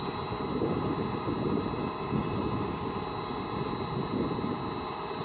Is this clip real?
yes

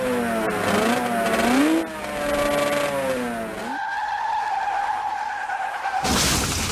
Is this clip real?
yes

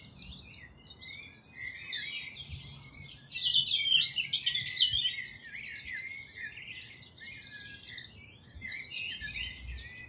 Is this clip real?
yes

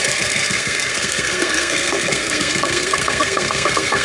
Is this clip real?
no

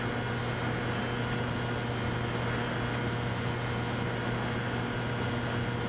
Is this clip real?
yes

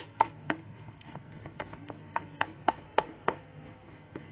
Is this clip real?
no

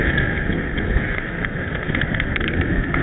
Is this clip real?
no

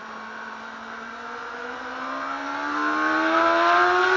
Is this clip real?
yes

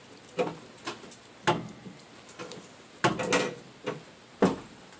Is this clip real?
yes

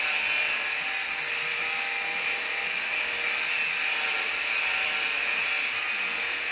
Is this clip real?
yes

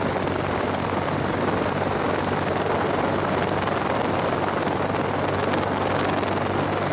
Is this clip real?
yes